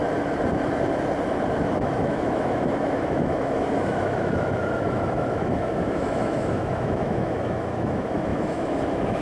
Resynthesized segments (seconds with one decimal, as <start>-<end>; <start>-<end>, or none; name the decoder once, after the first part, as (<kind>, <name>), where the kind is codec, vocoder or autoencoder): 1.6-9.2 (autoencoder, DAC-VAE)